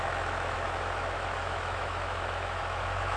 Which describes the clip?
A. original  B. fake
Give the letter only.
B